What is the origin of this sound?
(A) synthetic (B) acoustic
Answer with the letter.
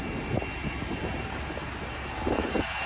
B